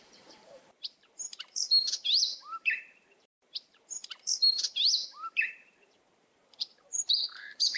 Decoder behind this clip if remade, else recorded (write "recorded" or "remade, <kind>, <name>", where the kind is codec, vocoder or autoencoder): remade, vocoder, BigVGAN v2